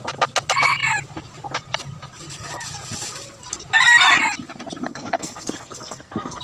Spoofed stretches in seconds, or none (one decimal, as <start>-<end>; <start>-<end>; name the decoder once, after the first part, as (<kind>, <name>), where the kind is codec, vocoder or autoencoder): 4.9-6.4 (codec, SNAC)